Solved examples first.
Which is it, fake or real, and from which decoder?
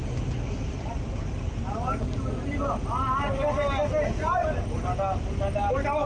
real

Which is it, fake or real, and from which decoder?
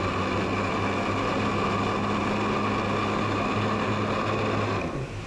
real